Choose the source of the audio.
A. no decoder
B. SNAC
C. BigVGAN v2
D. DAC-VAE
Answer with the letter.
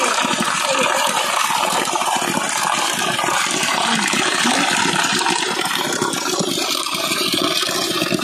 C